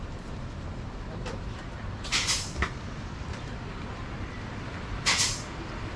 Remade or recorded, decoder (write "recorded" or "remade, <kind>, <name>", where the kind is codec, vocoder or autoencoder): remade, vocoder, BigVGAN v2